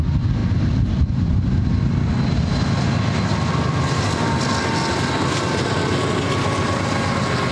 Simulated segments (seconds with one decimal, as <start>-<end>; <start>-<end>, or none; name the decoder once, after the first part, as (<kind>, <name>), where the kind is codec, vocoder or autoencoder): none